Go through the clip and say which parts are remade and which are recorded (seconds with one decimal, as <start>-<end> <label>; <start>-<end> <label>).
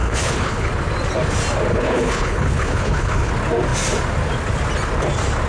0.0-0.7 remade; 0.7-1.7 recorded; 1.7-3.3 remade; 3.3-5.5 recorded